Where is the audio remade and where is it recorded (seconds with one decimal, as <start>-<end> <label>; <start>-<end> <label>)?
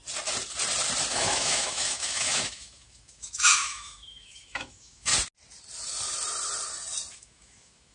0.0-1.1 recorded; 1.1-5.1 remade; 5.1-7.1 recorded; 7.1-7.9 remade